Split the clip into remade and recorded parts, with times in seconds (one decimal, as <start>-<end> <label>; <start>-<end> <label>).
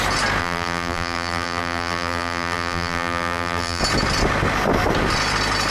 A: 0.0-0.4 recorded; 0.4-3.8 remade; 3.8-5.7 recorded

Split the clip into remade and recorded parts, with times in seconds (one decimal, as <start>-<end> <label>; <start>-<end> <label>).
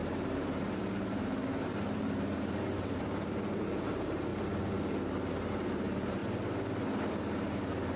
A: 0.0-4.3 remade; 4.3-5.3 recorded; 5.3-6.2 remade; 6.2-7.1 recorded; 7.1-8.0 remade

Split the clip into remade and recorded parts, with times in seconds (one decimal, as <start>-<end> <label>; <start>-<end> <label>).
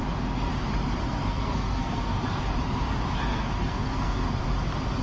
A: 0.0-1.0 recorded; 1.0-2.2 remade; 2.2-3.3 recorded; 3.3-4.4 remade; 4.4-5.0 recorded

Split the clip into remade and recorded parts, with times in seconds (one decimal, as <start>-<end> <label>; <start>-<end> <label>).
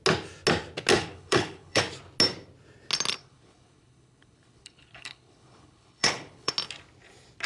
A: 0.0-0.9 recorded; 0.9-1.8 remade; 1.8-3.2 recorded; 3.2-6.5 remade; 6.5-7.5 recorded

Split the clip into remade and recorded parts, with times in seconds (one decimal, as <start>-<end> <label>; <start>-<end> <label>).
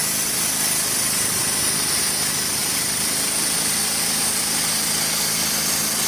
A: 0.0-1.4 remade; 1.4-2.6 recorded; 2.6-4.6 remade; 4.6-6.1 recorded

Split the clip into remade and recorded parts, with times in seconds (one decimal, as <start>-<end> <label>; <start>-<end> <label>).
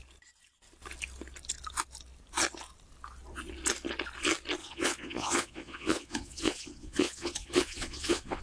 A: 0.0-4.6 recorded; 4.6-8.4 remade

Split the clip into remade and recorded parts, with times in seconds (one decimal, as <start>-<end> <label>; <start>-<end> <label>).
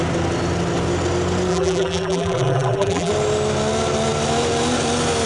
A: 0.0-1.5 recorded; 1.5-3.1 remade; 3.1-5.3 recorded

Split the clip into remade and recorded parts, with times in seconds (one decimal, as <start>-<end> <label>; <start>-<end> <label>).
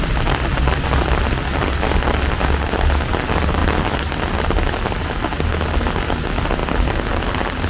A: 0.0-7.7 recorded